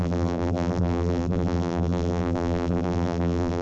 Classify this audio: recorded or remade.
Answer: remade